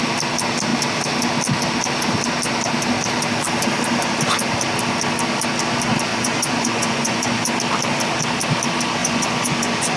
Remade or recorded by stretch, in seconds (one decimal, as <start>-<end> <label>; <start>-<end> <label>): 0.0-6.1 recorded; 6.1-7.5 remade; 7.5-9.0 recorded; 9.0-10.0 remade